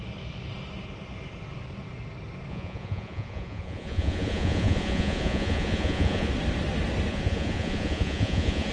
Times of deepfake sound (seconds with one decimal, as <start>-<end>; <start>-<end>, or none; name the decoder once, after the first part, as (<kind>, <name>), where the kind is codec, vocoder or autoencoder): 2.5-6.3 (vocoder, Vocos); 7.1-8.7